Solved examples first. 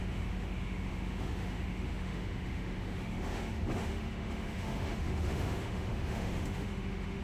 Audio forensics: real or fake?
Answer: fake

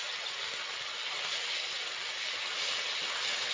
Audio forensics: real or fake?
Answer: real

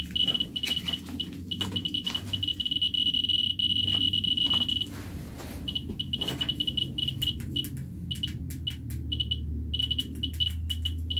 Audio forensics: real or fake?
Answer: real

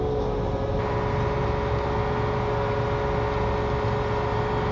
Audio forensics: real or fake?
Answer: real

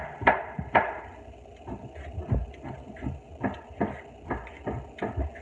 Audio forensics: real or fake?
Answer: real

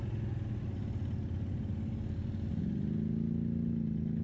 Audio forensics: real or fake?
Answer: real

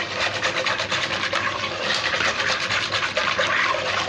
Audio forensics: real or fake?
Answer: real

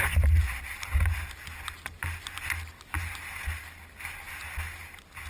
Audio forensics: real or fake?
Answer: real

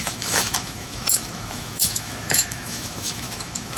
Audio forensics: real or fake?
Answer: fake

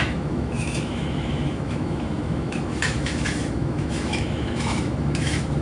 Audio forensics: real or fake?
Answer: fake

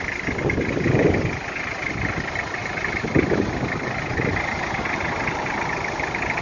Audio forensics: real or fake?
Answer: real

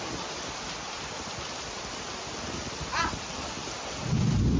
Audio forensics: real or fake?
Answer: real